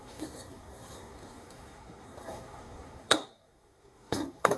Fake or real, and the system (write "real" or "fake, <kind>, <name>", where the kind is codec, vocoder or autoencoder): fake, codec, SNAC